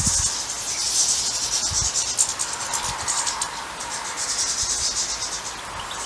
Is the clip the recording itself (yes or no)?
yes